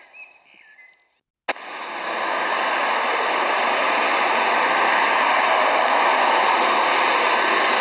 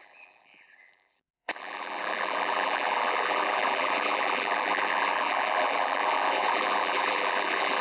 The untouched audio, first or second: first